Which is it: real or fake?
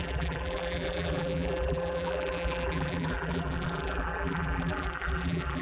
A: fake